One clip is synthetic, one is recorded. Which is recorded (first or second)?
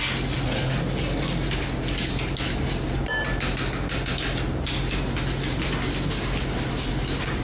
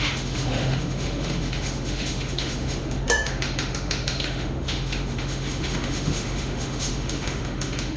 first